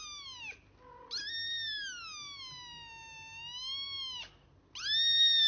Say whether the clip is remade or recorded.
recorded